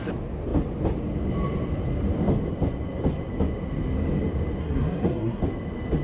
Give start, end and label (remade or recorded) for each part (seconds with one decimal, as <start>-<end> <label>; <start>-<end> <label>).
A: 0.0-4.6 recorded; 4.6-5.4 remade; 5.4-6.0 recorded